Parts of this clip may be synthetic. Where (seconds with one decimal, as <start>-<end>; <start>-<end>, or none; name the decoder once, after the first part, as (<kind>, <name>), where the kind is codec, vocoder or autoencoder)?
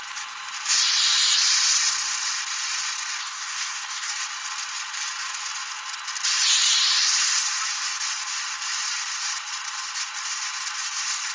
3.2-4.1 (codec, SNAC)